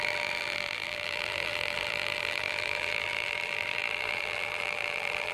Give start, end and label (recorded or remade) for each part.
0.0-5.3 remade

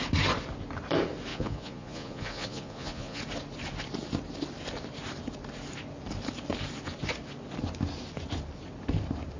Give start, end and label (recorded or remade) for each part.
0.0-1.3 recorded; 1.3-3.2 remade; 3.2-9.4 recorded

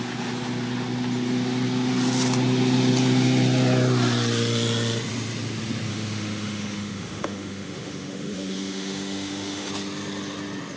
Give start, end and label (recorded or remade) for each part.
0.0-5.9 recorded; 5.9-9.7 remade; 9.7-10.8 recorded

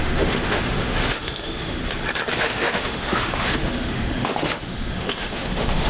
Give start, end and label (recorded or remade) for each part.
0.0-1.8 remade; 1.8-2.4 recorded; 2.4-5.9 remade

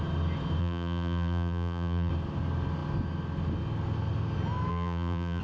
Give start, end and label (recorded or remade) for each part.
0.0-0.6 recorded; 0.6-2.1 remade; 2.1-4.7 recorded; 4.7-5.4 remade

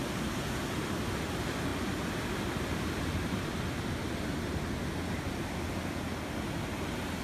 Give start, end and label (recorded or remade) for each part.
0.0-7.2 recorded

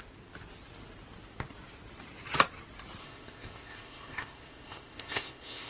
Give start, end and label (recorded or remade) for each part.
0.0-3.0 recorded; 3.0-5.7 remade